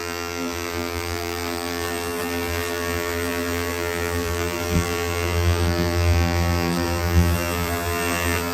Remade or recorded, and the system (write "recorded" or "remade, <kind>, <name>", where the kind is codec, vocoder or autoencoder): remade, vocoder, BigVGAN v2